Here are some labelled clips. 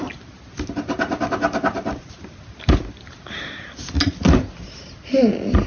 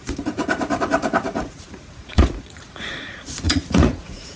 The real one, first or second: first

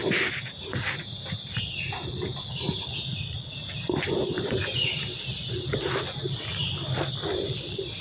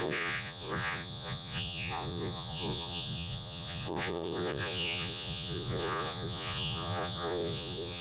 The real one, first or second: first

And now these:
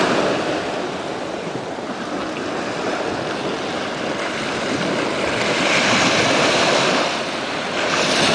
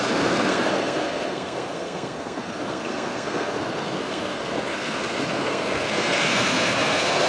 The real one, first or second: first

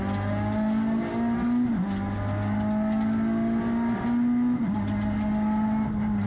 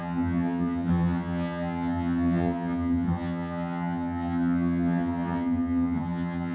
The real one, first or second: first